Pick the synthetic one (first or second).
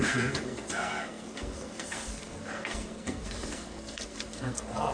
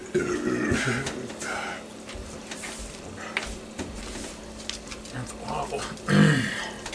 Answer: first